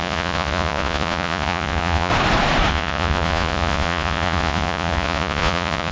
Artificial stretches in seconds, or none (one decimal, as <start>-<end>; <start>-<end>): 0.0-2.1; 2.7-5.9